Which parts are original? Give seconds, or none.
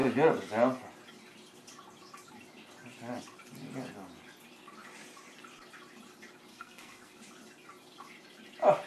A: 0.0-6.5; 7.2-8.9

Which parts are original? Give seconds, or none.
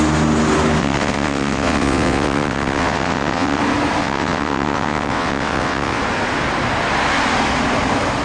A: 0.0-0.8; 3.6-4.0; 6.0-8.2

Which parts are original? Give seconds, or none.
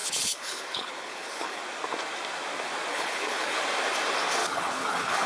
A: 1.6-2.9; 3.6-4.4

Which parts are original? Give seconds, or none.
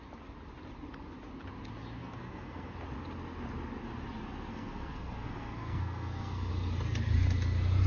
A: 0.0-2.0; 2.7-4.5; 6.5-7.9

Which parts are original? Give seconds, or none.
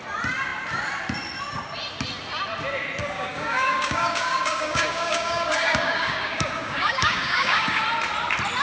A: 0.0-3.0; 7.8-8.6